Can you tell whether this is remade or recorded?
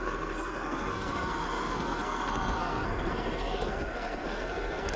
remade